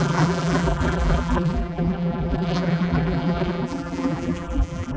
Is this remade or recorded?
remade